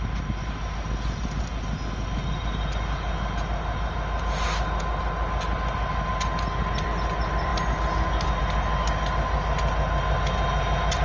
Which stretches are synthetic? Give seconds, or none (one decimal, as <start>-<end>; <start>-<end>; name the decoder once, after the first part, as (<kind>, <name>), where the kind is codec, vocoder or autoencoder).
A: none

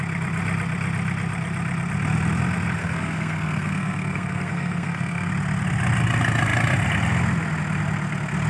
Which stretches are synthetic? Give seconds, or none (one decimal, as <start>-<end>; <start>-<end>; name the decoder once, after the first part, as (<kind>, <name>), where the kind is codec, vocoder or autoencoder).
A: 2.8-5.3 (codec, SNAC)

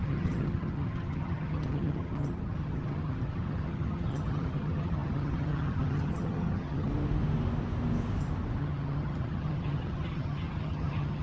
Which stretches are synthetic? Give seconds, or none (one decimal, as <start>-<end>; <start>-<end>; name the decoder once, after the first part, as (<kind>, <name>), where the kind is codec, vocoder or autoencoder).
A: 0.0-6.9 (vocoder, HiFi-GAN); 8.6-11.2

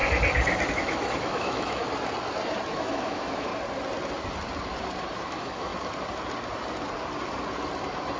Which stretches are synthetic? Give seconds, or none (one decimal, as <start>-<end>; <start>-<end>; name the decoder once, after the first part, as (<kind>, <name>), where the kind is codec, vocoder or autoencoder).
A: 0.7-1.8 (autoencoder, DAC-VAE); 2.7-3.5; 5.2-5.7

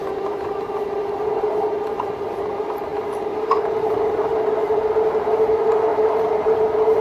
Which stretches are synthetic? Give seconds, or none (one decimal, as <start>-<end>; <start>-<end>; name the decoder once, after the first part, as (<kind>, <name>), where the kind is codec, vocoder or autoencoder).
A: none